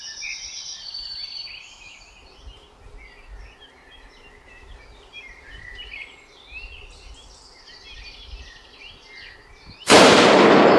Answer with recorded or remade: recorded